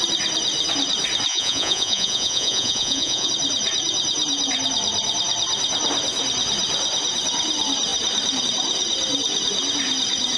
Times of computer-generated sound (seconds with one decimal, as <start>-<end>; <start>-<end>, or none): 1.3-3.3